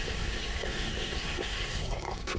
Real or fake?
fake